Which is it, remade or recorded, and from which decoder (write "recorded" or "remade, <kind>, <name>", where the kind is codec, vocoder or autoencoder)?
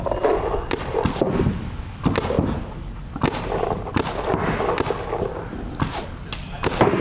recorded